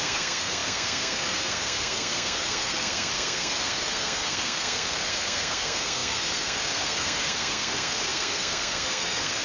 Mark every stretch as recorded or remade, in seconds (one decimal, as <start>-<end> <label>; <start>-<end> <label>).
0.0-9.4 remade